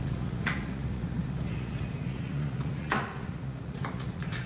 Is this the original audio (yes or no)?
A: no